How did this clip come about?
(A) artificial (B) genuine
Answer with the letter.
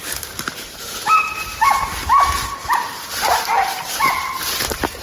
A